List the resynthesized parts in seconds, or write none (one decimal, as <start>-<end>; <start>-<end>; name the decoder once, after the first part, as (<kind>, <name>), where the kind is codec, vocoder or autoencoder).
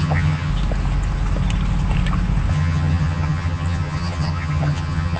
0.0-0.5 (vocoder, HiFi-GAN); 2.5-5.2